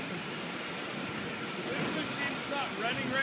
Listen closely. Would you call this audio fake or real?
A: real